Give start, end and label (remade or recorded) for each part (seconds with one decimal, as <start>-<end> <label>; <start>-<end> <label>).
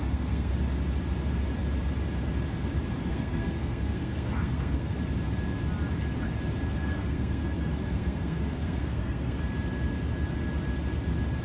0.0-0.5 remade; 0.5-3.1 recorded; 3.1-4.9 remade; 4.9-6.7 recorded; 6.7-9.4 remade; 9.4-11.4 recorded